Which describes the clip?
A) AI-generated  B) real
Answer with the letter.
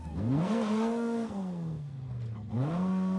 A